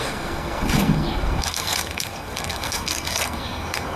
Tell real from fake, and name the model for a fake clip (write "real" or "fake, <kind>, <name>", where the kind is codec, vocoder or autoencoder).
fake, codec, SNAC